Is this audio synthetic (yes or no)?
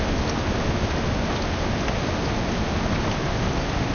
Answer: no